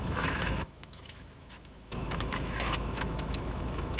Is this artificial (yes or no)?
yes